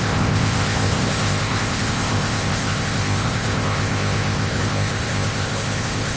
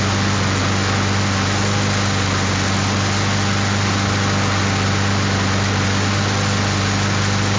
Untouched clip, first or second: second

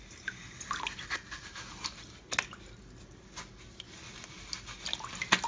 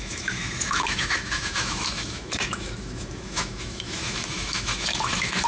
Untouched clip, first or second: first